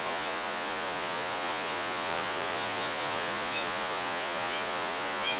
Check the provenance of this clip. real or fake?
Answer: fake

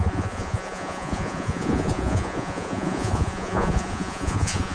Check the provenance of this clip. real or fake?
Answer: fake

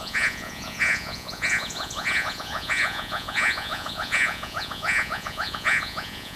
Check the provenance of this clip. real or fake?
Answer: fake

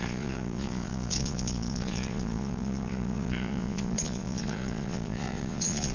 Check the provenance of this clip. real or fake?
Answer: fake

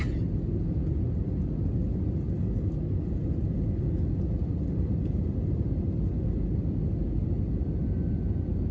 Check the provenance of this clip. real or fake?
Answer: real